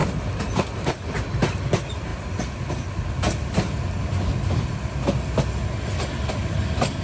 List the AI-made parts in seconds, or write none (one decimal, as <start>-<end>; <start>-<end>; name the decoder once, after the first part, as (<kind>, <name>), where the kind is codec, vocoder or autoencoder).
none